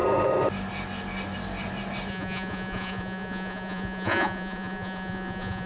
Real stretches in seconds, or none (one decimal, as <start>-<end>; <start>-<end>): 0.0-2.1